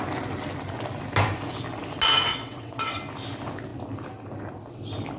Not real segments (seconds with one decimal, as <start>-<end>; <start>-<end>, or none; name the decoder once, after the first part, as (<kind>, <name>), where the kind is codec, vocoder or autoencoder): 2.3-3.0 (vocoder, WaveNeXt)